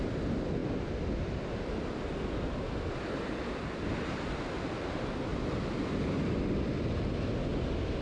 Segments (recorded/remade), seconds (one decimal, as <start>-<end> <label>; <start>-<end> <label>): 0.0-8.0 recorded